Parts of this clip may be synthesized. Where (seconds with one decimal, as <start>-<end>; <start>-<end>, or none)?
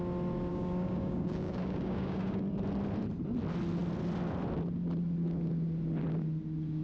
0.5-2.5